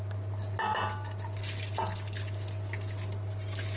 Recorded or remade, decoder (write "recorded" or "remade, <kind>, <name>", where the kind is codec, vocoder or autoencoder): recorded